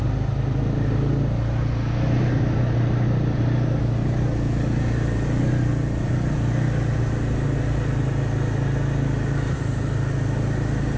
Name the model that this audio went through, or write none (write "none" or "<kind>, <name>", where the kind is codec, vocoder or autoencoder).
none